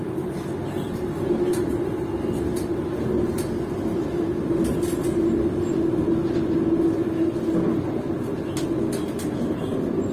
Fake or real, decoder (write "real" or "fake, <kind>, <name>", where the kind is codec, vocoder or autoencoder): real